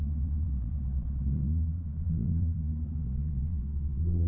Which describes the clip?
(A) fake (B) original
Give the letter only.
A